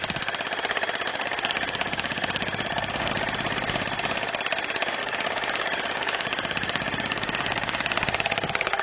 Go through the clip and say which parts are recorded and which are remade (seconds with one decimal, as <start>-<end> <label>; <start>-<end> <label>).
0.0-1.1 recorded; 1.1-3.1 remade; 3.1-5.0 recorded; 5.0-8.8 remade